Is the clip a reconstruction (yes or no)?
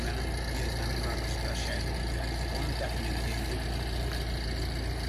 no